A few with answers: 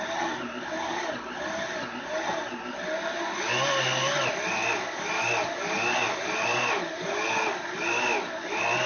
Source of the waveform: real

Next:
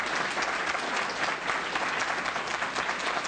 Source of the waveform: real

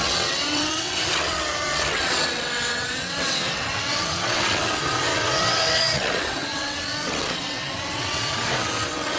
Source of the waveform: fake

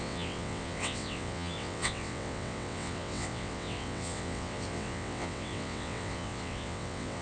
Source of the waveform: fake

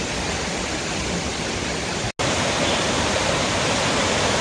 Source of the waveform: real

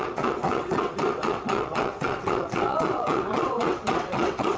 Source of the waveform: fake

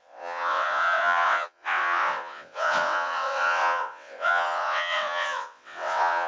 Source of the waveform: fake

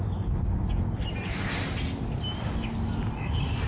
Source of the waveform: real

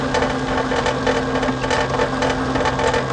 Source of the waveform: real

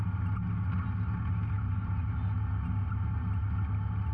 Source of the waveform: real